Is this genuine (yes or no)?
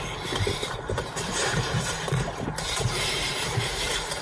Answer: no